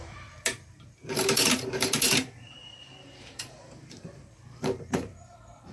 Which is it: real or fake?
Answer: fake